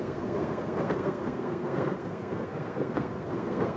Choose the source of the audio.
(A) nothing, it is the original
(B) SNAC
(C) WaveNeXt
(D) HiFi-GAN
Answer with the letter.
B